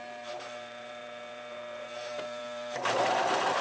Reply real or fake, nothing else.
fake